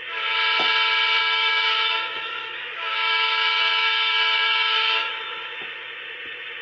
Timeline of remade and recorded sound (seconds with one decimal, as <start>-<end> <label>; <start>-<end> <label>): 0.0-1.2 recorded; 1.2-5.1 remade; 5.1-6.6 recorded